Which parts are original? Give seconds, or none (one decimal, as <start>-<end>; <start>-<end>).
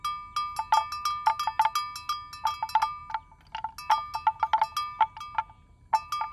0.0-6.3